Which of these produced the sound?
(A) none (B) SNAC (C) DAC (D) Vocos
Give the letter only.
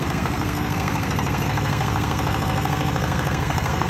B